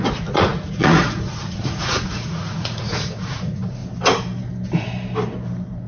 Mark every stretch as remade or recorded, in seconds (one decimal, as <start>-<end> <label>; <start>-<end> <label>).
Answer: 0.0-3.8 remade; 3.8-5.9 recorded